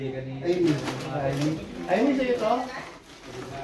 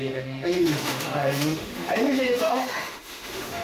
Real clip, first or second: first